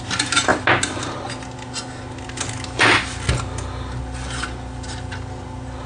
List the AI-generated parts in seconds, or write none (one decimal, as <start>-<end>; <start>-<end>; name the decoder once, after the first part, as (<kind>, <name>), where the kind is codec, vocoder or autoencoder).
none